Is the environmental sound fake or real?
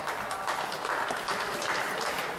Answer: real